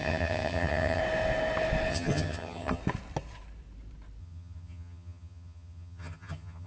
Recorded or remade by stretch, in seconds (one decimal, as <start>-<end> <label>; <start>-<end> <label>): 0.0-1.0 remade; 1.0-1.9 recorded; 1.9-2.8 remade; 2.8-4.2 recorded; 4.2-6.7 remade